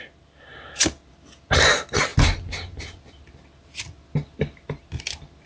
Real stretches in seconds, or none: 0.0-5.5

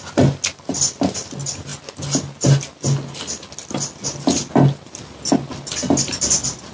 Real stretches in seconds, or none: 0.0-6.7

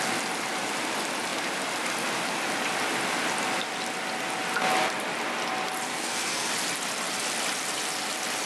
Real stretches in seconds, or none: 0.0-5.9; 6.5-8.5

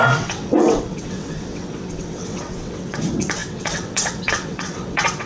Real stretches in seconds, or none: none